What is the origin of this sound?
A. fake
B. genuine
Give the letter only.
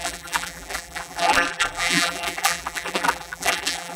A